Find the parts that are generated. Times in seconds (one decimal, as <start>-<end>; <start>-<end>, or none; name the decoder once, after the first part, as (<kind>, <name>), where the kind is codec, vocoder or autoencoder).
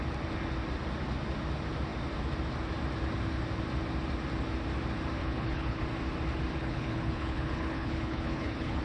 5.2-5.8 (codec, HILCodec); 6.6-8.8